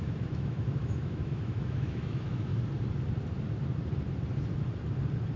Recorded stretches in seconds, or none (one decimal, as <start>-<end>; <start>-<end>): 2.5-5.4